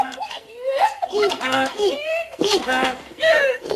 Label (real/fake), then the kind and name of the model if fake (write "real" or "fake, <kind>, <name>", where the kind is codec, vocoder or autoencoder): fake, codec, SNAC